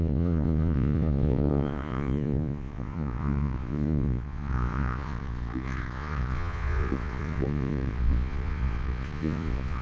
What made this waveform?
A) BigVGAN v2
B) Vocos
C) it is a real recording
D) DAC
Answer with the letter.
B